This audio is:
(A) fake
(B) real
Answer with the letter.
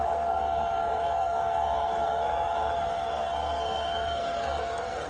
A